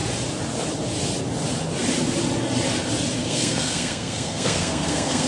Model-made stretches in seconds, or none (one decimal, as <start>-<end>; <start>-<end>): 3.2-5.3